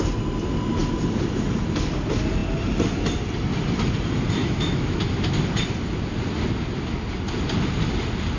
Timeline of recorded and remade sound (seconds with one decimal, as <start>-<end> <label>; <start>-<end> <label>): 0.0-4.4 recorded; 4.4-5.0 remade; 5.0-8.4 recorded

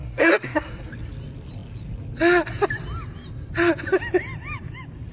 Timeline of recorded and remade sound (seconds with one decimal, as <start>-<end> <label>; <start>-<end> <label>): 0.0-0.9 remade; 0.9-5.1 recorded

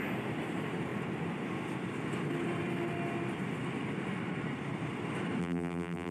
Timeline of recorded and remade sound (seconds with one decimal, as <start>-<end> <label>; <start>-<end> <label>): 0.0-5.4 recorded; 5.4-6.1 remade

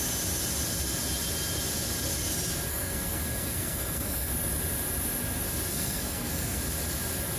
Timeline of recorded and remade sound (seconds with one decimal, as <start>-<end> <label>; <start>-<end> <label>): 0.0-2.7 recorded; 2.7-4.3 remade; 4.3-5.7 recorded; 5.7-6.6 remade; 6.6-7.4 recorded